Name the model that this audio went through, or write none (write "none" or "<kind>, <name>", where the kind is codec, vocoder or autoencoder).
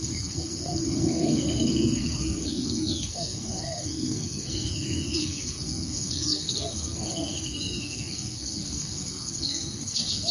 codec, SNAC